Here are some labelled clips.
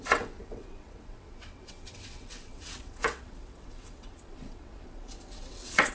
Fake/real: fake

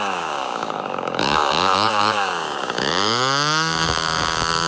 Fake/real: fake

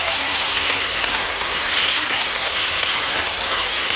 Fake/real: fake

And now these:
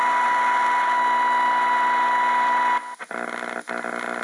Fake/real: real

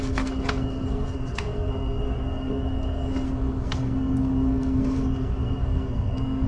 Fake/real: fake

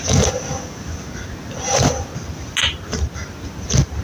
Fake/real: real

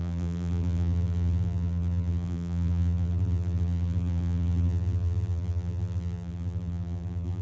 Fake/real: fake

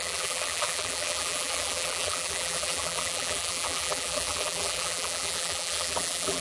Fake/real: fake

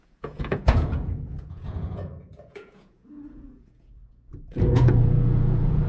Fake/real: fake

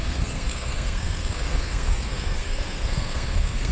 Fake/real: fake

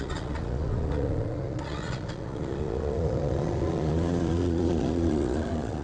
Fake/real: fake